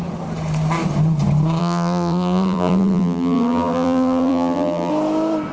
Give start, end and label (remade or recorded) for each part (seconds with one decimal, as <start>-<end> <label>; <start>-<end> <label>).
0.0-1.6 recorded; 1.6-4.9 remade; 4.9-5.5 recorded